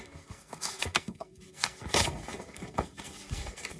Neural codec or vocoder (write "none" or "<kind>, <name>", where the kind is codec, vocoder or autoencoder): codec, SNAC